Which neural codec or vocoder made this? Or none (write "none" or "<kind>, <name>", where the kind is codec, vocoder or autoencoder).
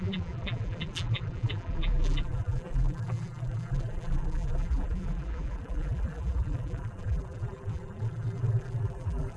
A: vocoder, BigVGAN v2